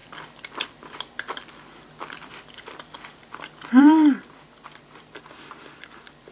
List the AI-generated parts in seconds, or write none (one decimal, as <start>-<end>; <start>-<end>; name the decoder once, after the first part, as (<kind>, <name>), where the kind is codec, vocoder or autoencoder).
3.8-6.3 (vocoder, BigVGAN v2)